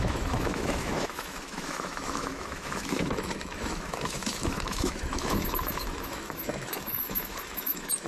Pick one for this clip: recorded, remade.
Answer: remade